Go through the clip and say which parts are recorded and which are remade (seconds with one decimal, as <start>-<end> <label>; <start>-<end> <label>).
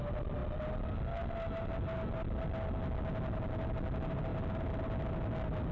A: 0.0-5.7 recorded